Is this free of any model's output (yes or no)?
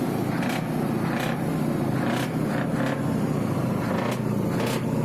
yes